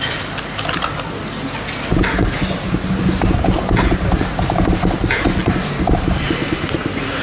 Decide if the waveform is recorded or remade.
recorded